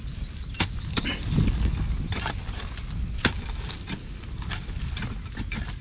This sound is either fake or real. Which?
real